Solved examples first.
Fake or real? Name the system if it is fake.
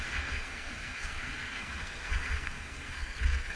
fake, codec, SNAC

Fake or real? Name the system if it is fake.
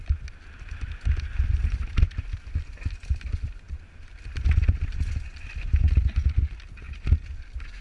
real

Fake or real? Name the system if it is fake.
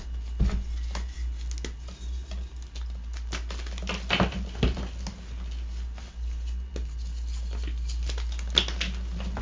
real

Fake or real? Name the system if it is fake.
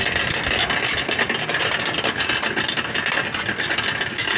real